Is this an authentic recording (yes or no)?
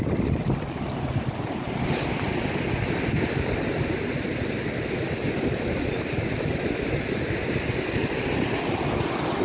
yes